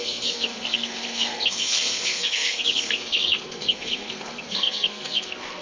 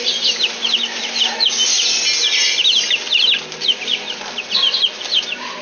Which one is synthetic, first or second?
first